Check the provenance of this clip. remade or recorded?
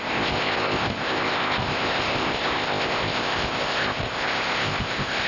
remade